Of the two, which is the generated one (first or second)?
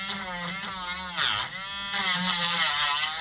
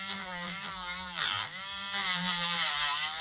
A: second